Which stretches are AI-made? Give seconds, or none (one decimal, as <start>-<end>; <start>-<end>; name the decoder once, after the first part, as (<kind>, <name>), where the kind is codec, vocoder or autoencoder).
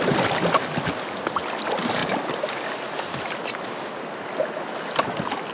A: none